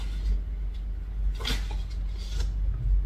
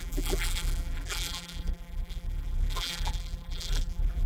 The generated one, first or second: second